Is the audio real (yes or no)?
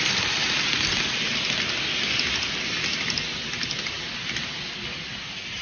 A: yes